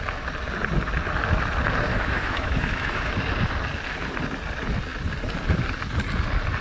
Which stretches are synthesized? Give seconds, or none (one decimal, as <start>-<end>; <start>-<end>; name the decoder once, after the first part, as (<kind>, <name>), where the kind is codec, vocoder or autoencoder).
1.9-3.1 (autoencoder, DAC-VAE)